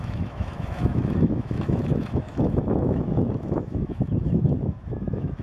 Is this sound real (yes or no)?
no